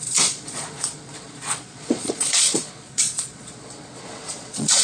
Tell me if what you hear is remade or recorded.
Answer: remade